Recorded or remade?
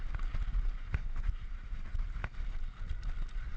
recorded